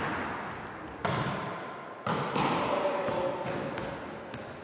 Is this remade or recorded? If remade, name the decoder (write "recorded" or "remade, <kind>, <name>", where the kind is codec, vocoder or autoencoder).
recorded